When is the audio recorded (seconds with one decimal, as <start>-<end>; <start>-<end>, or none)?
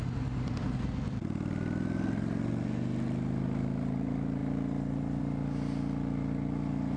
0.0-7.0